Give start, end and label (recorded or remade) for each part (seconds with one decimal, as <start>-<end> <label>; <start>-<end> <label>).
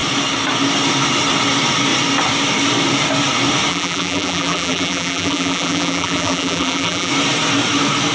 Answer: 0.0-3.7 recorded; 3.7-7.1 remade; 7.1-8.1 recorded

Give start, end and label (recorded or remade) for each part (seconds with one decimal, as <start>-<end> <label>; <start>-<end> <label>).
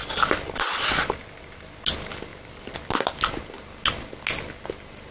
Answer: 0.0-2.3 recorded; 2.3-3.4 remade; 3.4-5.1 recorded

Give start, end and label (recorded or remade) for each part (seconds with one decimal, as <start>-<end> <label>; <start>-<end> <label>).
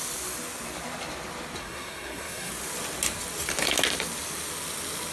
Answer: 0.0-1.6 recorded; 1.6-2.5 remade; 2.5-5.1 recorded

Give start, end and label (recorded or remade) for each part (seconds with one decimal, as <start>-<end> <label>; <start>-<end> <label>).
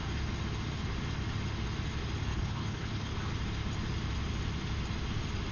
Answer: 0.0-2.3 recorded; 2.3-3.1 remade; 3.1-5.5 recorded